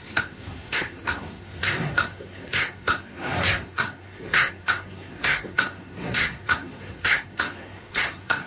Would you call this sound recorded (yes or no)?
no